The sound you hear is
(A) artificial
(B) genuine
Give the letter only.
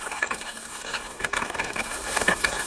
A